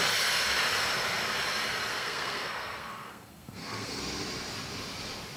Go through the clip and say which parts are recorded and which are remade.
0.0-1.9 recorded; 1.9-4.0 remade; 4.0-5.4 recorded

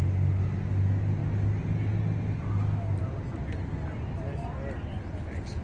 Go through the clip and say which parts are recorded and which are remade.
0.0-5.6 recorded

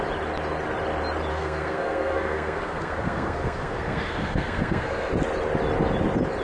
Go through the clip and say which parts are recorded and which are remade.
0.0-1.3 recorded; 1.3-5.1 remade; 5.1-6.4 recorded

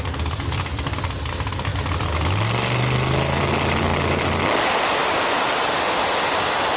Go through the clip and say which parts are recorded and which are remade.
0.0-6.8 recorded

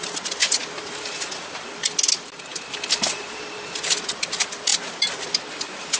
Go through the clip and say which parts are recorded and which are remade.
0.0-6.0 recorded

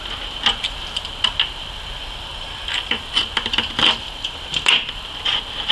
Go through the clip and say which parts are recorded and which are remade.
0.0-2.3 recorded; 2.3-3.2 remade; 3.2-5.7 recorded